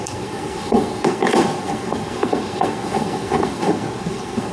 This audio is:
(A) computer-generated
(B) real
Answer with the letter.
A